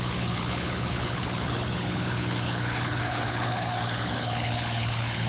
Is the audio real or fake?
fake